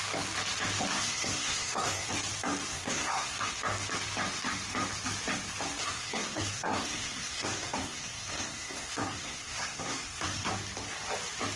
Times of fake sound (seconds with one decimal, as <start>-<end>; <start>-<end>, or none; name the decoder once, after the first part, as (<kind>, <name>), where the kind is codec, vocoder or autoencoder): 0.9-2.1 (codec, SNAC); 2.7-3.5; 5.8-10.5